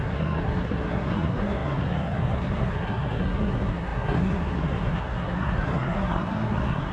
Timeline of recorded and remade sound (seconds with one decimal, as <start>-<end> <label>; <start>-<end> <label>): 0.0-6.9 remade